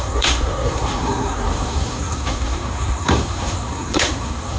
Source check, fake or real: fake